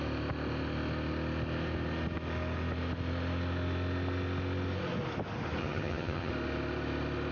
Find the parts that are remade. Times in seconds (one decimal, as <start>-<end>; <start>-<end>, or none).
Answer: 5.6-6.3